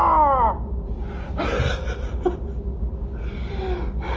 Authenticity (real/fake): real